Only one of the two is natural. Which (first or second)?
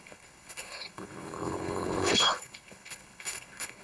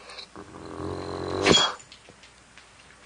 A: second